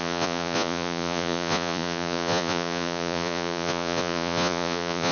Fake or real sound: fake